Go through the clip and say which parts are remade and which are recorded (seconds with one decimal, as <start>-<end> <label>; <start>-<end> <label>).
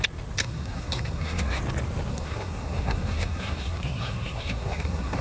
0.0-0.4 recorded; 0.4-1.6 remade; 1.6-2.1 recorded; 2.1-5.2 remade